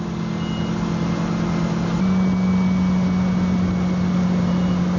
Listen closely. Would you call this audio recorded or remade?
recorded